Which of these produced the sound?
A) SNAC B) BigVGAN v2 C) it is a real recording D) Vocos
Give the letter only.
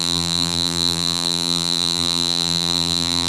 B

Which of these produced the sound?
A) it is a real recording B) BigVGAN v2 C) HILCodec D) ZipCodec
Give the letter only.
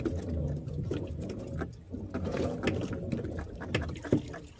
A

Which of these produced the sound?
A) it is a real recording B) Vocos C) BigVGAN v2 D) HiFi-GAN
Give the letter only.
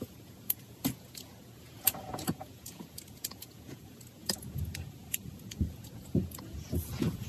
B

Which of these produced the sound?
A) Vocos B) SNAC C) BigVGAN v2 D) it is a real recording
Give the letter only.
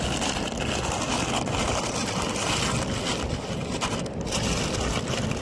D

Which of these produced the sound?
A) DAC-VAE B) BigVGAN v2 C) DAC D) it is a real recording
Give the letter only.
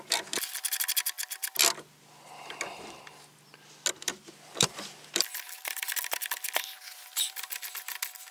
D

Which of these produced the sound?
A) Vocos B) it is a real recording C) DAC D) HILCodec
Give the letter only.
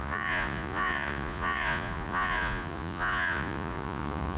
A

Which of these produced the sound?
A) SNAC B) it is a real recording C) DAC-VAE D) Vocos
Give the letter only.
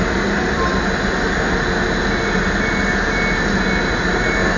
B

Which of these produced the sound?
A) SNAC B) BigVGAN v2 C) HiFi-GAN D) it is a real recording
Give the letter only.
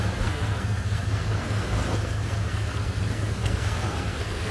A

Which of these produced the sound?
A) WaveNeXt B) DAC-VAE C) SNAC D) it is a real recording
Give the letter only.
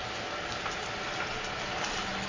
D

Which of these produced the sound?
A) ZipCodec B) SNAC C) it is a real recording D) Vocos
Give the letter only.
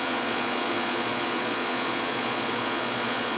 D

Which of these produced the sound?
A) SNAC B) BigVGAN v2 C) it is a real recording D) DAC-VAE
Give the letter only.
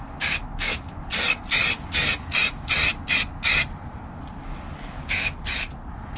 C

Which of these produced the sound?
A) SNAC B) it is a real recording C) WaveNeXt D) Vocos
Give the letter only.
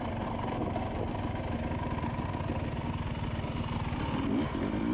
B